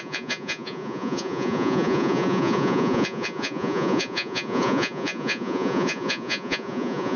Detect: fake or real fake